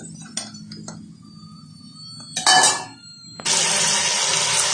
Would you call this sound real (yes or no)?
yes